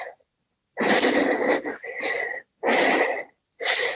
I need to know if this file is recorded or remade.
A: recorded